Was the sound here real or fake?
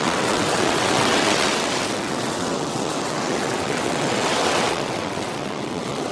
fake